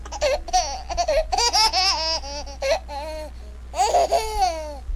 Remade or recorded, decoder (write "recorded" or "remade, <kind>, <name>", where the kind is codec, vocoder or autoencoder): recorded